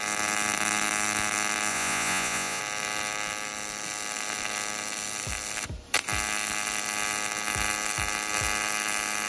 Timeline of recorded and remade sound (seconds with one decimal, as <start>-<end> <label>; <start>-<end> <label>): 0.0-1.7 recorded; 1.7-2.6 remade; 2.6-9.3 recorded